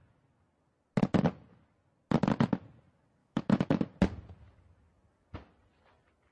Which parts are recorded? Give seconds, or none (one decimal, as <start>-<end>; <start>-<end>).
0.0-3.2; 3.8-6.3